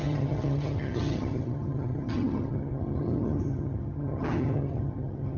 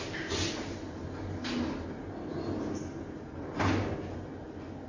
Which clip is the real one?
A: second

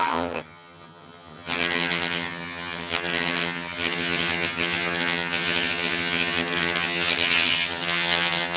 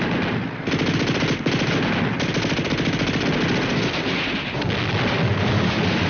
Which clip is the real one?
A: second